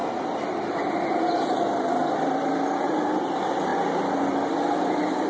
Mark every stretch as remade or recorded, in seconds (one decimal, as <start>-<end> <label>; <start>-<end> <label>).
0.0-5.3 recorded